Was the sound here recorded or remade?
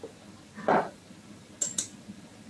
recorded